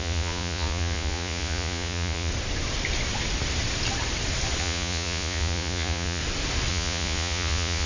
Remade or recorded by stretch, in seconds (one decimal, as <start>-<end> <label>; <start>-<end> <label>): 0.0-2.3 remade; 2.3-4.6 recorded; 4.6-6.2 remade; 6.2-6.7 recorded; 6.7-7.9 remade